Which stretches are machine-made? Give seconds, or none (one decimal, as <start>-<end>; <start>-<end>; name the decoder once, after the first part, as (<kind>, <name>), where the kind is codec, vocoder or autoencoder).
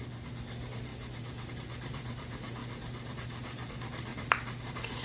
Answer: none